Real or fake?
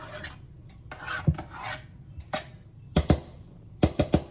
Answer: real